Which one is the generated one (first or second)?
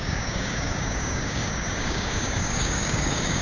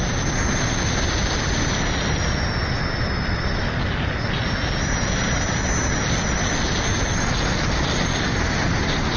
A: first